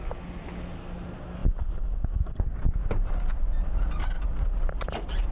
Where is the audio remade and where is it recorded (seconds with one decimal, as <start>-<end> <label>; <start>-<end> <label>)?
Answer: 0.0-5.3 recorded